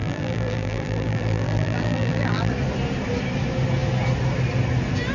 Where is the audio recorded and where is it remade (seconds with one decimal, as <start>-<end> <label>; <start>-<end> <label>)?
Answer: 0.0-2.5 remade; 2.5-5.1 recorded